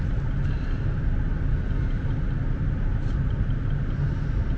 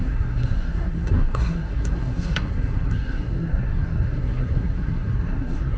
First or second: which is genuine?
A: first